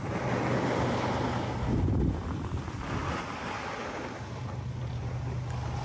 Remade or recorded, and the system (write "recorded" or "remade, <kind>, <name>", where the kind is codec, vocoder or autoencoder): recorded